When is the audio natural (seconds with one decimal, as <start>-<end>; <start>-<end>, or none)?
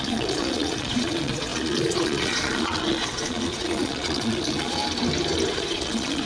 4.8-5.5